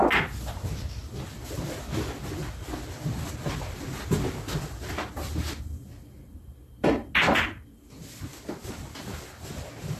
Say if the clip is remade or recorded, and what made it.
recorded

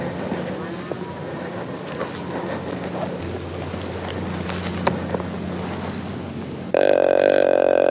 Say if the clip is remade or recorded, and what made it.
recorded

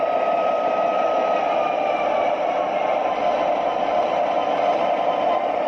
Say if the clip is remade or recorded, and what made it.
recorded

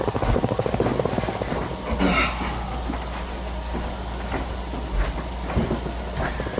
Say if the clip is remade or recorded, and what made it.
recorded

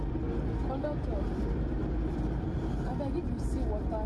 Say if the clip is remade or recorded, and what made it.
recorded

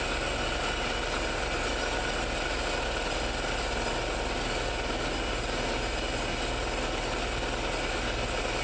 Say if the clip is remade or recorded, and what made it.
recorded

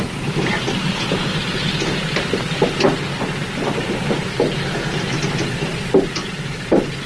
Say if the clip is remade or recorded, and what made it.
recorded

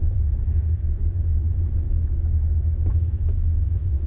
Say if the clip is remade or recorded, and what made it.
remade, autoencoder, DAC-VAE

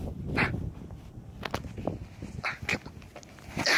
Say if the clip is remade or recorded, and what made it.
recorded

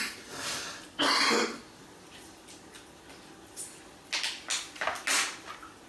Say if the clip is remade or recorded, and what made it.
recorded